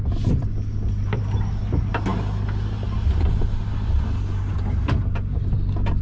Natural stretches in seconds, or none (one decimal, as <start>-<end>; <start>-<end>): 0.0-6.0

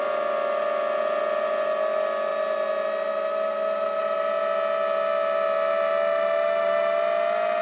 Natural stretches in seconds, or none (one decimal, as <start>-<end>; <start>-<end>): 0.0-7.6

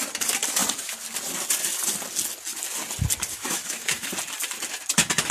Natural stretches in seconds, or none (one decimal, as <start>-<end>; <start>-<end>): 0.0-3.3; 4.1-5.3

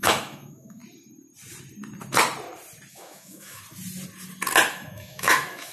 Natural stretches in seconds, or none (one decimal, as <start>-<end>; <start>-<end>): 0.8-2.9; 3.6-4.7

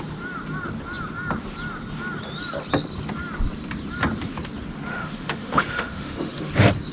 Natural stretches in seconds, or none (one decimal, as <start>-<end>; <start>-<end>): 0.0-4.9; 6.5-6.9

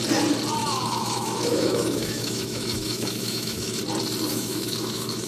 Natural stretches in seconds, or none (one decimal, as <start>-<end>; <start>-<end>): 0.0-0.6; 3.8-4.3

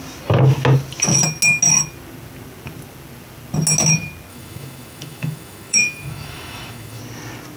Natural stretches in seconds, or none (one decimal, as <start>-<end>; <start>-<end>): 0.0-4.3; 7.0-7.6